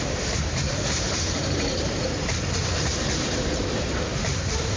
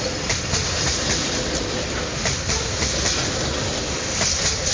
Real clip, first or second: second